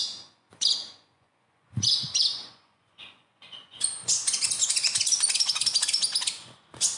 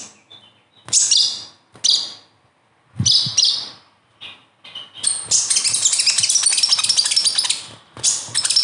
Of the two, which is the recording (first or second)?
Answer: second